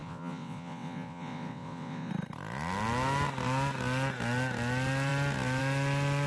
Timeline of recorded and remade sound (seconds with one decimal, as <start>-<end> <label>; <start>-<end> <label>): 0.0-2.1 remade; 2.1-6.3 recorded